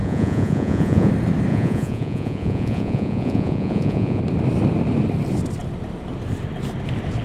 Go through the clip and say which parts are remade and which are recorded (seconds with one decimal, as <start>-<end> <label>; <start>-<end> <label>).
0.0-1.1 remade; 1.1-1.5 recorded; 1.5-4.2 remade; 4.2-7.2 recorded

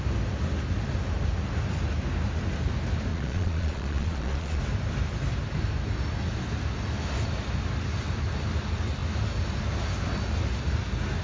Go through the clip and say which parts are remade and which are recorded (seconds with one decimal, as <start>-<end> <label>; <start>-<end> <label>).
0.0-3.1 recorded; 3.1-4.6 remade; 4.6-11.2 recorded

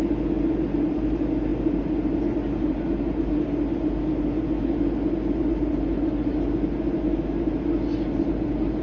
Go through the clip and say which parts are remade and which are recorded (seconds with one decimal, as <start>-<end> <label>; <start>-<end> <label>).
0.0-8.8 recorded

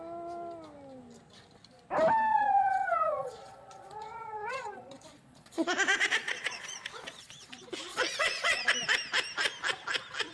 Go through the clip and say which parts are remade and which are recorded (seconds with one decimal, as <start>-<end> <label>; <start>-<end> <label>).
0.0-2.3 recorded; 2.3-7.5 remade; 7.5-7.9 recorded; 7.9-8.6 remade; 8.6-10.3 recorded